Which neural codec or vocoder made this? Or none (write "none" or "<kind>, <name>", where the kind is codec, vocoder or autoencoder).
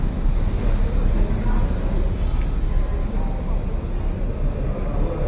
none